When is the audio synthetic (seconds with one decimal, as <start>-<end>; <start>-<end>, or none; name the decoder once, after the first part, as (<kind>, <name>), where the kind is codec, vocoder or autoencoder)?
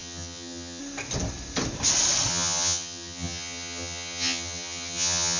0.0-0.8 (vocoder, HiFi-GAN); 2.3-5.4